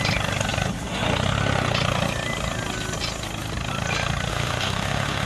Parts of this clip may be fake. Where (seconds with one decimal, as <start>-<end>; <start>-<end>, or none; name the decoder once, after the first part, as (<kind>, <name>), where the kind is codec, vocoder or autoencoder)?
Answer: 4.3-5.3 (autoencoder, DAC-VAE)